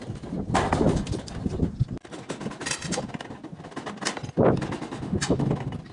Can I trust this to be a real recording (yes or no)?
yes